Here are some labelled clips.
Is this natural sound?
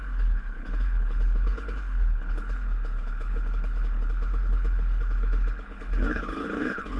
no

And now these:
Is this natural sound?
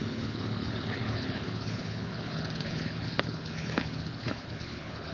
no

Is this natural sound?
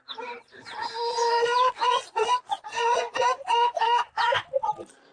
yes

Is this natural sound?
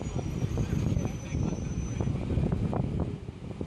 yes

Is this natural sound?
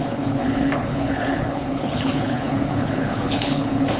no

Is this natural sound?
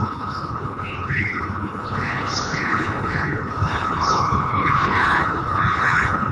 no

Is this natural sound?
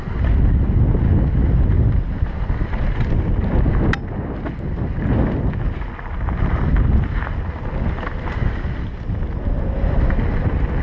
yes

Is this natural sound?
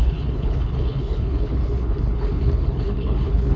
no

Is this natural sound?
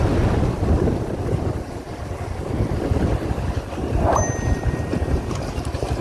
yes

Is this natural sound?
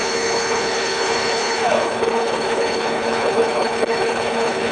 no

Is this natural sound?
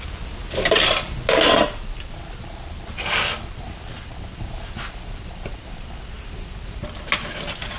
yes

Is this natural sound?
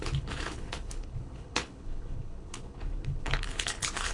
no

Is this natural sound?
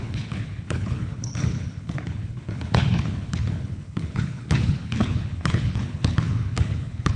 no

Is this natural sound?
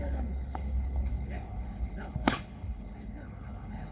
no